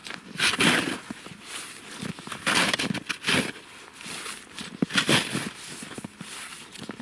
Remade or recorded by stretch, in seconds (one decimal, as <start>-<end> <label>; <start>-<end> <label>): 0.0-7.0 recorded